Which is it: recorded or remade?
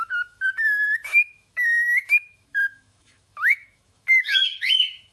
remade